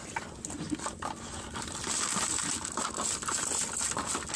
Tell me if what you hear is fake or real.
real